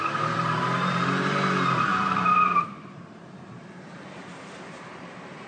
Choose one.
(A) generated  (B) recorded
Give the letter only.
A